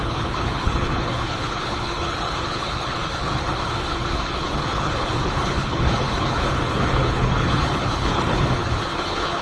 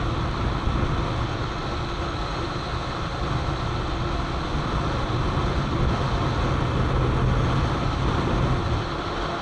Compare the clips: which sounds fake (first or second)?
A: first